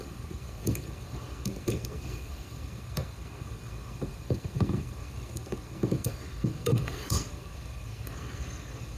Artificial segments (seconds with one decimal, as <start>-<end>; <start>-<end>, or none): 0.0-9.0